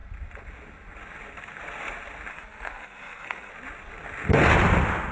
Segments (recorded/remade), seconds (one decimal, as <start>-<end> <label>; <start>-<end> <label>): 0.0-2.3 recorded; 2.3-3.5 remade; 3.5-5.1 recorded